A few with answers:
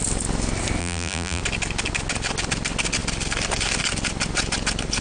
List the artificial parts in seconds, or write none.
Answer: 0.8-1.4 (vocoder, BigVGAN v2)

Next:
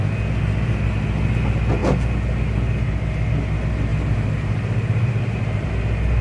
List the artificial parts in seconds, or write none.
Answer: 3.9-5.7 (vocoder, BigVGAN v2)

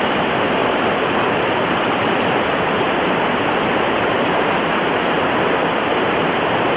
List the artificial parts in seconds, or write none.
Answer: 0.0-6.8 (vocoder, BigVGAN v2)

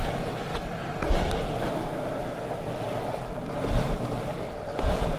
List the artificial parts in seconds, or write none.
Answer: 0.6-1.8 (vocoder, BigVGAN v2)

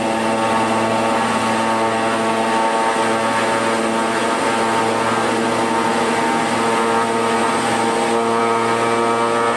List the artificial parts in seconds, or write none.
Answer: none

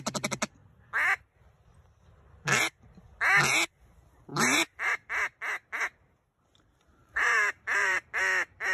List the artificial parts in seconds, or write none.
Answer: 4.3-4.9 (vocoder, BigVGAN v2); 7.0-8.2

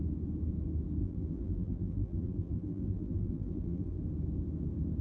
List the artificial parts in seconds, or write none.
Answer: 1.0-4.0 (vocoder, BigVGAN v2)